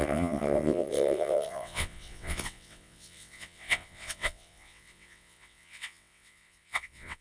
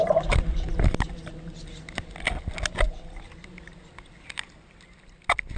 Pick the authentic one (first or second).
second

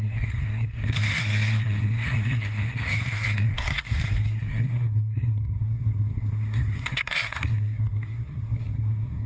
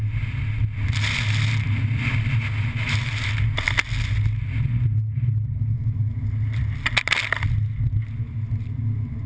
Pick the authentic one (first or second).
second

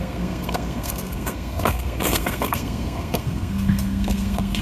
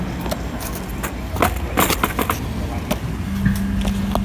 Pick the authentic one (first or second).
second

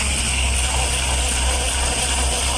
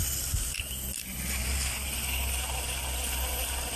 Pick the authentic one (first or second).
first